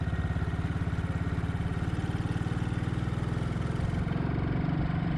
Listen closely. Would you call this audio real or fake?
real